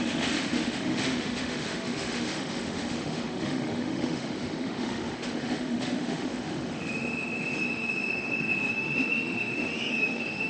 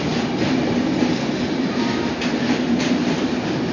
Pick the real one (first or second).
second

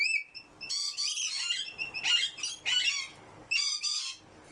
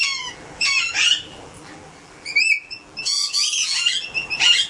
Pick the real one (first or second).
first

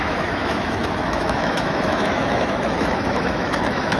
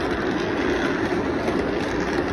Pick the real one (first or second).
second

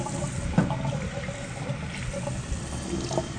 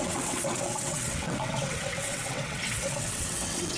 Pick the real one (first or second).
first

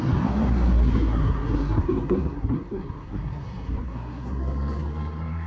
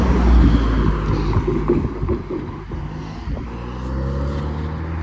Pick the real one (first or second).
second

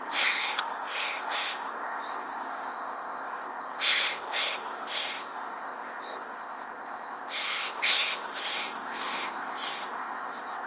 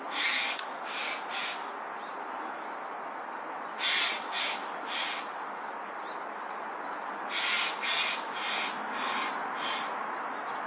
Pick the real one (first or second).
second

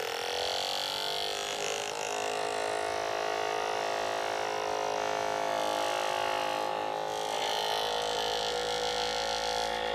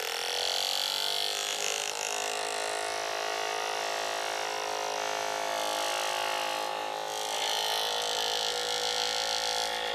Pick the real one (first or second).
first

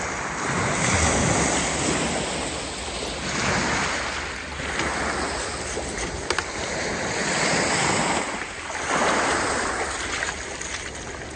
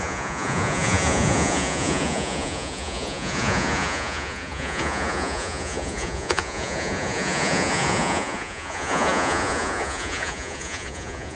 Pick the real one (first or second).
first